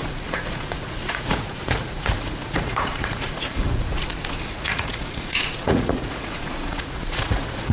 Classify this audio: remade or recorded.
remade